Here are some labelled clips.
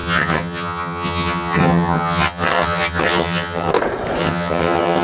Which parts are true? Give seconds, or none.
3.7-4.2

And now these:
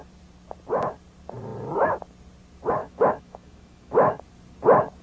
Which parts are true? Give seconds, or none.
0.0-2.8; 4.2-5.0

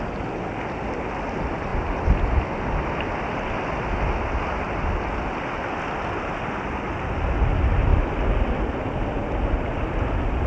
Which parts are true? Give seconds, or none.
0.0-10.5

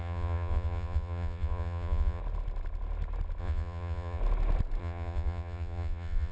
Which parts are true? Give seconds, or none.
2.2-3.4; 4.2-4.8

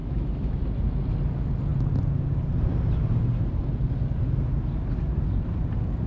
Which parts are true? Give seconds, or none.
0.6-6.1

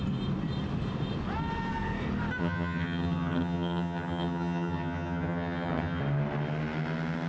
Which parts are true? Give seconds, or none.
0.0-2.4; 6.0-7.3

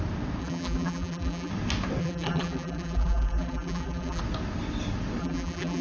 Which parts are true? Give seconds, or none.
0.0-0.4; 1.5-2.0; 4.2-5.2